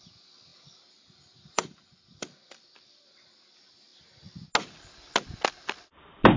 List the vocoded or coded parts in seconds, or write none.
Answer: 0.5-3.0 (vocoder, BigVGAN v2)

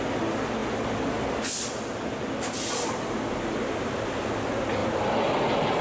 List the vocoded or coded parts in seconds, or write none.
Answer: none

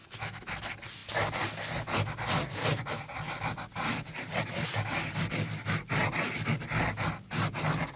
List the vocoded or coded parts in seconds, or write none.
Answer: 0.0-0.5 (autoencoder, DAC-VAE)